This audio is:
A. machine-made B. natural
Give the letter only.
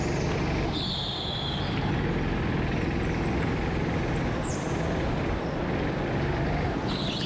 B